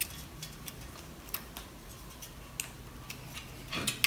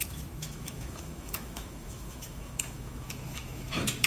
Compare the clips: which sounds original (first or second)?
first